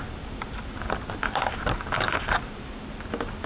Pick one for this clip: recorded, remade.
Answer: recorded